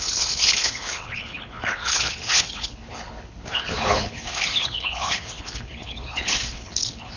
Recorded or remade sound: remade